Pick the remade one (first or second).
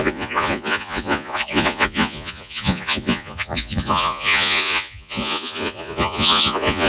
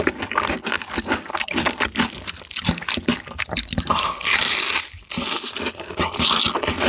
first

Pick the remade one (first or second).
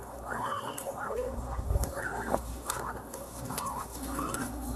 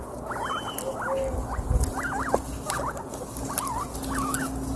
first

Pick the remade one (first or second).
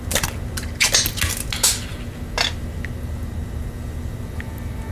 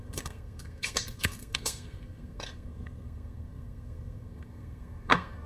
second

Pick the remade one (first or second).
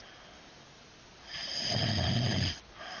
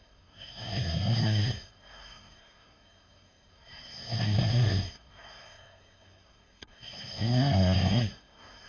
second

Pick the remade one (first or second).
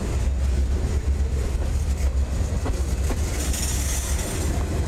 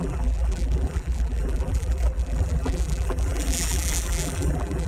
second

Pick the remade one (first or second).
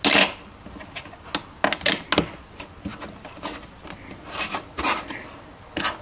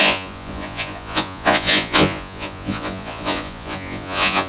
second